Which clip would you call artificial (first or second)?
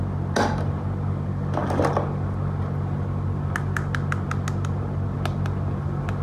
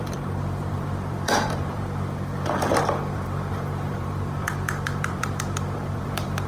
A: second